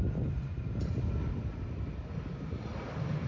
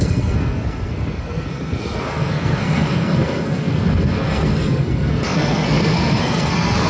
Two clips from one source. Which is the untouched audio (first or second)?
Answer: first